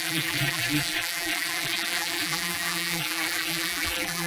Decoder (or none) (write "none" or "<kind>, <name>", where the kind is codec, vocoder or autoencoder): vocoder, BigVGAN v2